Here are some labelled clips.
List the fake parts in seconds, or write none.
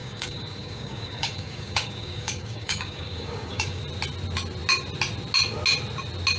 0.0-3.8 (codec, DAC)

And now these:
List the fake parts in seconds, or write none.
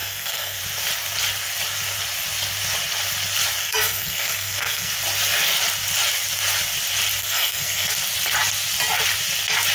0.0-0.6 (codec, SNAC); 3.6-4.9; 7.2-7.9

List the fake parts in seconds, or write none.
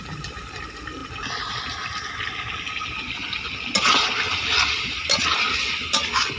none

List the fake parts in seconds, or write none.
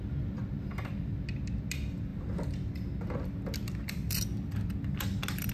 none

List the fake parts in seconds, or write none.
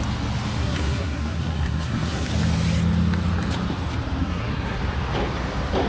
0.6-2.3 (codec, SNAC); 4.2-4.8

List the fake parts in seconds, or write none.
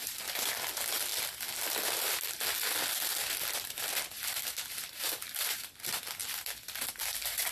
none